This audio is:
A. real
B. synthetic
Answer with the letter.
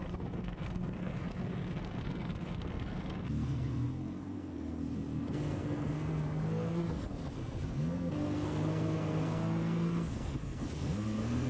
B